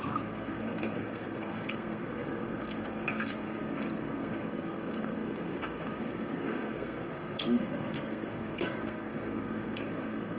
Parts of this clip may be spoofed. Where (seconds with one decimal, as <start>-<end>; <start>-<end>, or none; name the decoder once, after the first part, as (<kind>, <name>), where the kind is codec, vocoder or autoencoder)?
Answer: 0.0-10.4 (codec, SNAC)